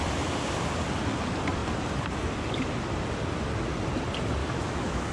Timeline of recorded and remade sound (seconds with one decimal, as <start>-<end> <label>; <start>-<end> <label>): 0.0-4.4 recorded; 4.4-5.1 remade